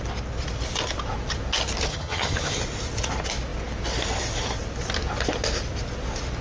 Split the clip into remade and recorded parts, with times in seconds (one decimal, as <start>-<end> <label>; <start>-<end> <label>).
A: 0.0-1.9 recorded; 1.9-2.6 remade; 2.6-6.4 recorded